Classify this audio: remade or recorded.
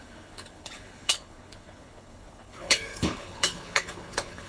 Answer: remade